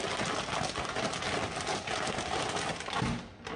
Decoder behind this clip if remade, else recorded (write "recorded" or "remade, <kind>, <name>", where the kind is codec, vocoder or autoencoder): recorded